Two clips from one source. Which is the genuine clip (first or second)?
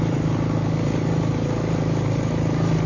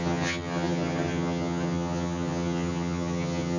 first